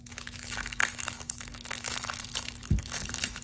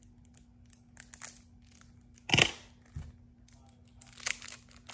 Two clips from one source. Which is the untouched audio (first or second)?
second